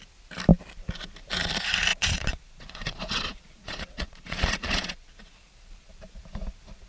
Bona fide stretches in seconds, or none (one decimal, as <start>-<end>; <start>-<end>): 0.0-1.9; 6.0-6.9